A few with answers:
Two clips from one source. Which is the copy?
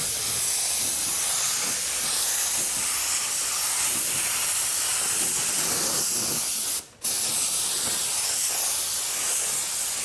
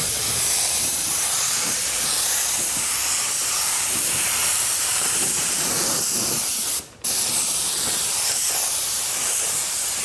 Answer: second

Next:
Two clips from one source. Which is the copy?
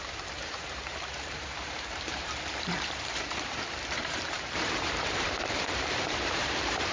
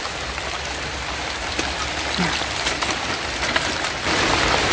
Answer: first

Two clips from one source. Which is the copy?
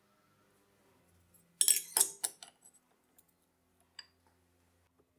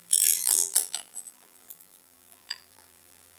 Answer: second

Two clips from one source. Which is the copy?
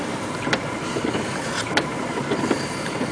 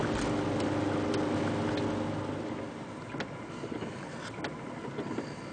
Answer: first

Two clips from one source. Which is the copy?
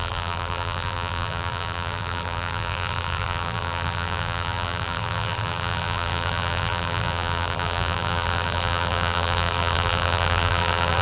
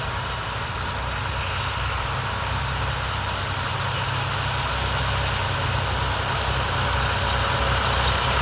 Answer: first